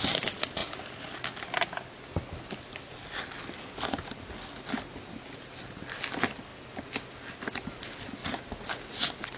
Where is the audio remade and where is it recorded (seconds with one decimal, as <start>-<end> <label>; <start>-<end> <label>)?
0.0-9.4 recorded